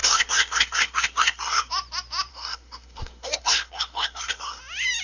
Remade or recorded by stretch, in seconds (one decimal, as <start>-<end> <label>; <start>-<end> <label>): 0.0-1.7 remade; 1.7-2.3 recorded; 2.3-4.6 remade; 4.6-5.0 recorded